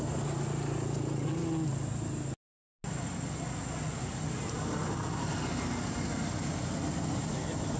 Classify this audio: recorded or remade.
recorded